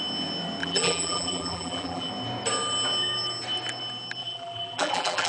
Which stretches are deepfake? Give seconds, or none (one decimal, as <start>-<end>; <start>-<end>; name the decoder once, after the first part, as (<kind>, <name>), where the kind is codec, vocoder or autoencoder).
0.6-2.1 (vocoder, BigVGAN v2); 4.2-5.3